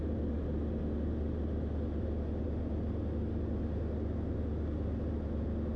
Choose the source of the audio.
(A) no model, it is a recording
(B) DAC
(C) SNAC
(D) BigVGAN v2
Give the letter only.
A